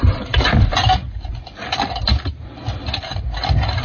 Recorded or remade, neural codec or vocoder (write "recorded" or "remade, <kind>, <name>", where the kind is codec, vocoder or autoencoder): recorded